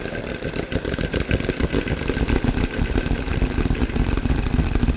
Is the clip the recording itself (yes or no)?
yes